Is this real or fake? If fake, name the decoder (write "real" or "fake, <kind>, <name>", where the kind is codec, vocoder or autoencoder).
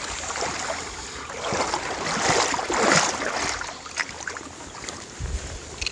real